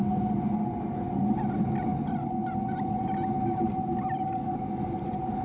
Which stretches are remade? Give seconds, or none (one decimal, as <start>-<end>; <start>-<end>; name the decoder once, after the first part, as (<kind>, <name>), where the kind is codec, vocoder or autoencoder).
none